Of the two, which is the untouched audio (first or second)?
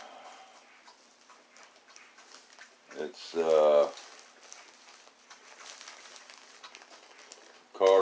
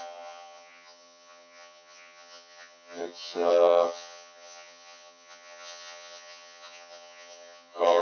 first